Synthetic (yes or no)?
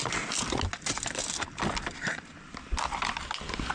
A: no